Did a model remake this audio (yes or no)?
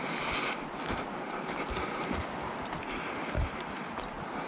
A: no